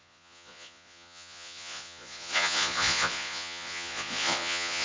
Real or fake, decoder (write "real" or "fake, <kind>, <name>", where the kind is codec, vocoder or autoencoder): fake, vocoder, Vocos